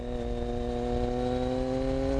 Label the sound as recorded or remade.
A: recorded